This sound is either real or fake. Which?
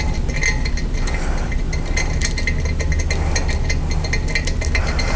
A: real